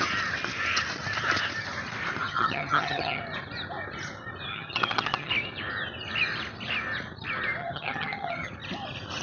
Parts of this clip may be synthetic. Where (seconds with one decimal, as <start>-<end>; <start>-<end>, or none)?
2.3-3.2; 4.5-5.3; 7.6-8.5